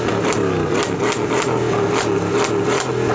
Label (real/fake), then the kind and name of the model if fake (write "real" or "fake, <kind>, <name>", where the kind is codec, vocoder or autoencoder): real